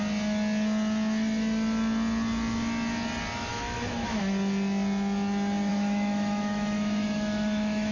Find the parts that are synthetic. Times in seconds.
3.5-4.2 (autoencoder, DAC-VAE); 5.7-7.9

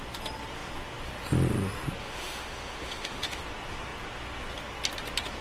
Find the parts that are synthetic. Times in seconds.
2.0-3.4 (autoencoder, DAC-VAE)

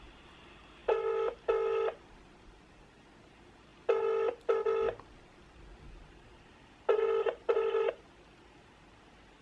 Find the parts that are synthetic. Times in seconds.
none

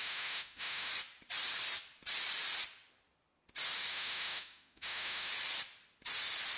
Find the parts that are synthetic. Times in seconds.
0.0-0.9 (autoencoder, DAC-VAE); 3.9-5.3

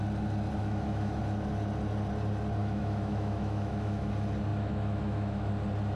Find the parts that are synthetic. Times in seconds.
0.6-1.2 (autoencoder, DAC-VAE); 2.6-4.1; 4.5-5.5